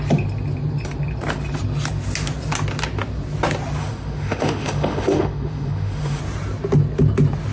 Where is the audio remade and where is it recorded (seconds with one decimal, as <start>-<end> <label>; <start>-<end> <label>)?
0.0-3.8 recorded; 3.8-6.2 remade; 6.2-7.5 recorded